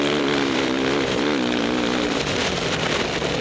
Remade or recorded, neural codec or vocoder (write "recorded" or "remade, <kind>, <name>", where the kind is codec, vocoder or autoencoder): remade, vocoder, BigVGAN v2